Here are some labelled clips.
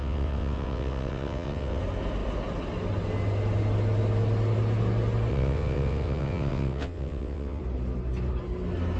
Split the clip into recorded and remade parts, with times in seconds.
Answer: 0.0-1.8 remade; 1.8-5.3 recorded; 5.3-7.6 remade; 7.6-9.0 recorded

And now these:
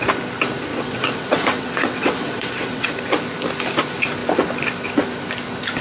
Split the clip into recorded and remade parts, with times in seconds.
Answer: 0.0-0.7 recorded; 0.7-2.9 remade; 2.9-5.8 recorded

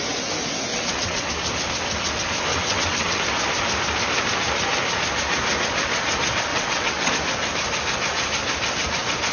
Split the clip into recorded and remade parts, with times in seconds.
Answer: 0.0-0.7 recorded; 0.7-1.3 remade; 1.3-2.5 recorded; 2.5-3.2 remade; 3.2-6.5 recorded; 6.5-7.1 remade; 7.1-9.3 recorded

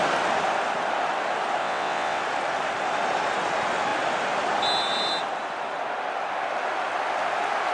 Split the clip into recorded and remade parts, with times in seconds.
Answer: 0.0-1.6 recorded; 1.6-2.2 remade; 2.2-7.7 recorded

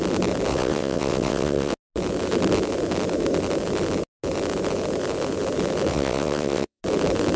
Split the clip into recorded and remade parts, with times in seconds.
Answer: 0.0-0.5 recorded; 0.5-1.7 remade; 1.7-5.9 recorded; 5.9-6.8 remade; 6.8-7.4 recorded